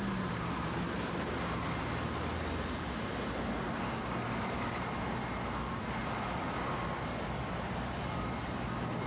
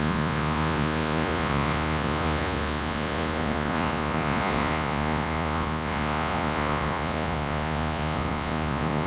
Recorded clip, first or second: first